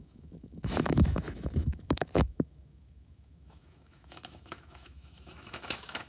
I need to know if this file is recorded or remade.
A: remade